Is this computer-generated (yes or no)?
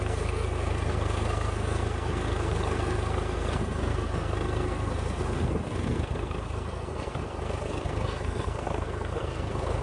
yes